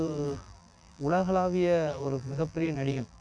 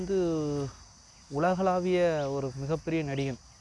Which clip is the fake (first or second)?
first